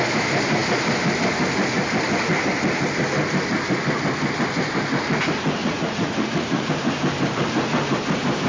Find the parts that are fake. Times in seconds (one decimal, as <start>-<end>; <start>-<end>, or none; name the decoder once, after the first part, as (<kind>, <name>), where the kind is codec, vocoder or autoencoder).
5.6-6.7 (vocoder, Vocos)